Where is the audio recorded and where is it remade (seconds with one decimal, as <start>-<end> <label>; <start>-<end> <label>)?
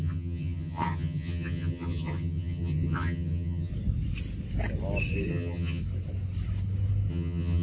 0.0-3.7 remade; 3.7-5.3 recorded; 5.3-5.8 remade; 5.8-7.1 recorded; 7.1-7.6 remade